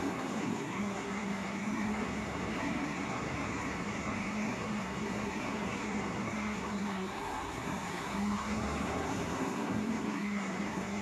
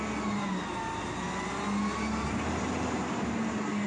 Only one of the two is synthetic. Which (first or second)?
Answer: first